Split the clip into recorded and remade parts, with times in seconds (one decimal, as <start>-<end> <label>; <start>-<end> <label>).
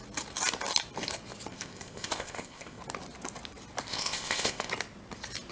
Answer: 0.0-1.5 recorded; 1.5-2.8 remade; 2.8-3.9 recorded; 3.9-4.7 remade; 4.7-5.5 recorded